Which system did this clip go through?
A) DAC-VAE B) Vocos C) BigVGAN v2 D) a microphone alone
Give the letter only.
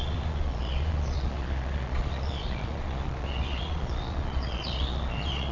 B